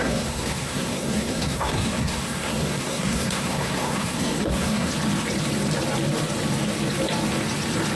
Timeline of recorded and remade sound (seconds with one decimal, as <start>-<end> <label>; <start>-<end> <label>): 0.0-4.9 remade; 4.9-8.0 recorded